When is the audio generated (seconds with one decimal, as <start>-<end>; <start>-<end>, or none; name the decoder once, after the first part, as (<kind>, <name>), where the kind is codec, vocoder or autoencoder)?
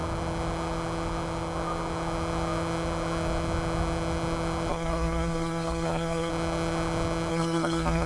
4.7-6.3 (codec, SNAC); 7.3-8.1